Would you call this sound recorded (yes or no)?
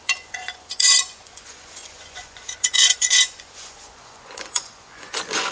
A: no